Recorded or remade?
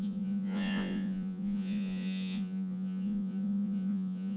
remade